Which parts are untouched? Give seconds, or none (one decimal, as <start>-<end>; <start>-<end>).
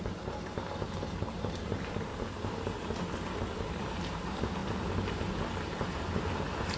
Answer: 2.1-3.6